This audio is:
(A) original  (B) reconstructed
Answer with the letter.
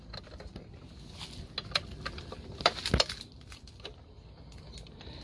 A